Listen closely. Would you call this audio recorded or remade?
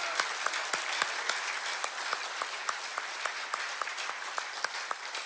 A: recorded